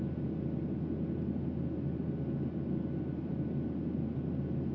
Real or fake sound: real